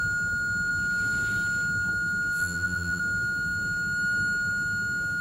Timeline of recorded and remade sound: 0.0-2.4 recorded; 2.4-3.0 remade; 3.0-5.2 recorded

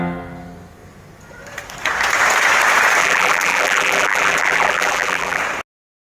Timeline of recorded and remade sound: 0.0-3.0 recorded; 3.0-5.4 remade; 5.4-6.0 recorded

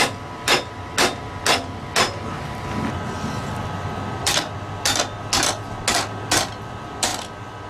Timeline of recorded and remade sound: 0.0-7.7 recorded

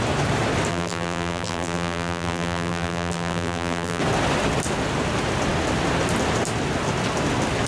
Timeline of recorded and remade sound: 0.0-0.7 recorded; 0.7-4.0 remade; 4.0-7.7 recorded

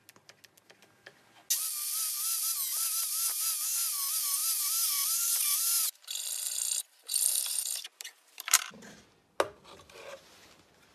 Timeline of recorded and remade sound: 0.0-4.4 recorded; 4.4-8.7 remade; 8.7-10.9 recorded

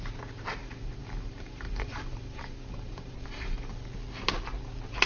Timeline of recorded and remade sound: 0.0-0.6 recorded; 0.6-3.7 remade; 3.7-5.1 recorded

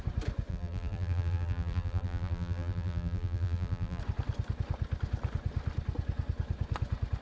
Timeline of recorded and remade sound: 0.0-0.5 recorded; 0.5-4.0 remade; 4.0-7.2 recorded